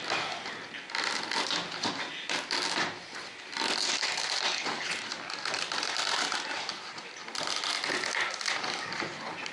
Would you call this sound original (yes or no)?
yes